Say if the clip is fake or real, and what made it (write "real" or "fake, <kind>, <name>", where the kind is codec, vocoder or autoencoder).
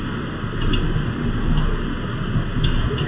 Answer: real